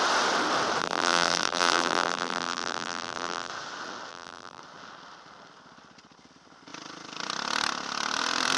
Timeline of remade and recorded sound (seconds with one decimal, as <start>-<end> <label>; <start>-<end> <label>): 0.0-0.8 recorded; 0.8-3.5 remade; 3.5-4.1 recorded; 4.1-4.6 remade; 4.6-8.6 recorded